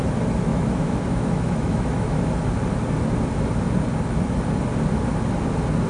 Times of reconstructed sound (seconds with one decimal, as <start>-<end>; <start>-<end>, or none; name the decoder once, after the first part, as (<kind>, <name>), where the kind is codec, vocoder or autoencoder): 0.5-2.3 (autoencoder, DAC-VAE)